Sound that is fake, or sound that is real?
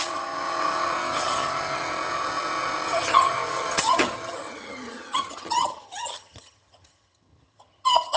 fake